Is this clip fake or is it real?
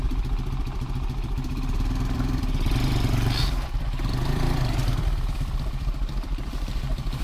fake